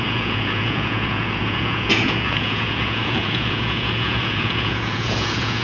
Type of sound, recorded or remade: remade